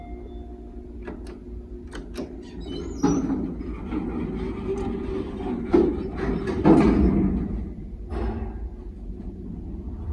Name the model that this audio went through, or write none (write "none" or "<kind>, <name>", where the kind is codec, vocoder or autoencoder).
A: none